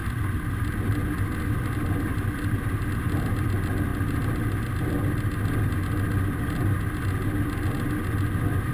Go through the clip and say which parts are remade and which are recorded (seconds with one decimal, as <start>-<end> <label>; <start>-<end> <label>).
0.0-8.7 recorded